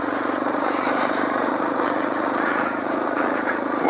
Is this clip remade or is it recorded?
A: remade